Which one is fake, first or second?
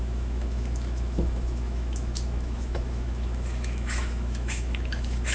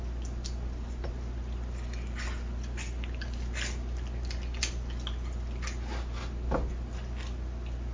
first